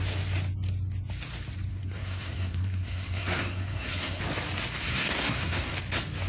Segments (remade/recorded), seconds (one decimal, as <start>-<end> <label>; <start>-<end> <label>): 0.0-1.7 recorded; 1.7-4.2 remade; 4.2-4.9 recorded; 4.9-5.7 remade; 5.7-6.3 recorded